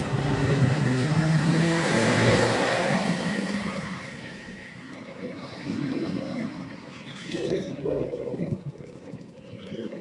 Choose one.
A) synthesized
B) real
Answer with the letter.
A